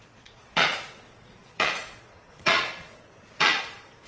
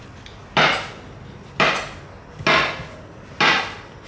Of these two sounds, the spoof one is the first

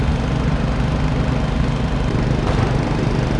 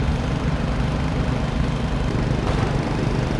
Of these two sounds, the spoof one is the second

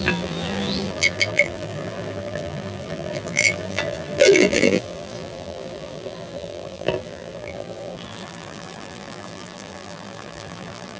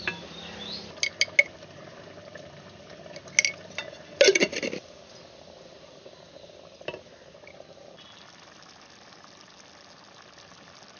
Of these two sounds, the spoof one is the first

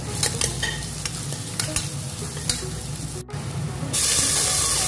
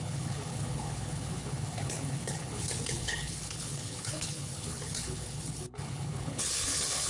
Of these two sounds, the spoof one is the second